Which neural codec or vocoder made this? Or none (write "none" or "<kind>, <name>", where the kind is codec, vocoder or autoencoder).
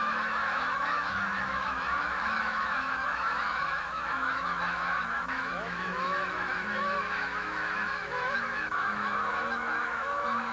autoencoder, DAC-VAE